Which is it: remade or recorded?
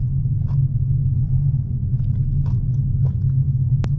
recorded